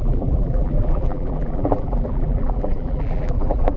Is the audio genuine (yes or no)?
no